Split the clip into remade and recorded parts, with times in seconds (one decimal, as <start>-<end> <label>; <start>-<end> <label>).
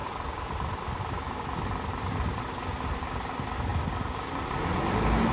0.0-5.3 recorded